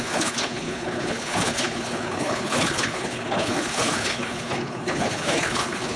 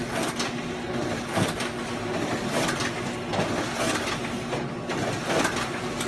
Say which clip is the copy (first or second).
first